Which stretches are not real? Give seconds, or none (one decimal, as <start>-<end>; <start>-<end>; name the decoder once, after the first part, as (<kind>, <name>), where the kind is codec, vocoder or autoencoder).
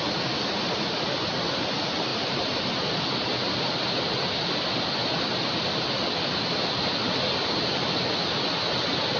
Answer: 2.1-3.5 (vocoder, BigVGAN v2)